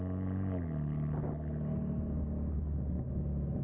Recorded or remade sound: recorded